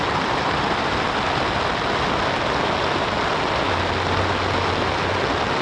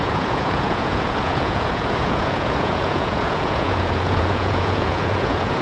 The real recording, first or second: first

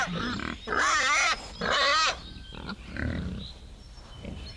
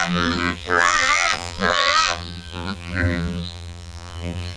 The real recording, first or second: first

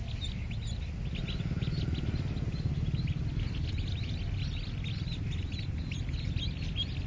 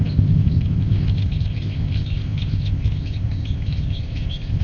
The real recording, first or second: first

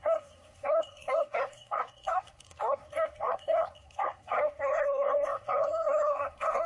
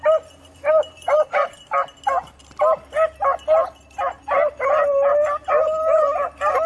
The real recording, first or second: second